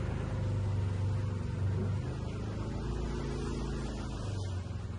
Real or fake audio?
real